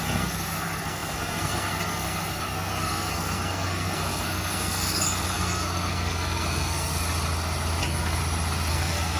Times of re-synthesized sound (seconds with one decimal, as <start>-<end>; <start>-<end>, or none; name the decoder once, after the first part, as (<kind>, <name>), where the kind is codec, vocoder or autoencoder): 0.0-6.9 (codec, SNAC); 7.8-8.2; 8.7-9.2